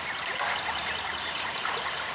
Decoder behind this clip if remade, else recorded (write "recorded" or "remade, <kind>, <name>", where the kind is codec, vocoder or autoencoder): recorded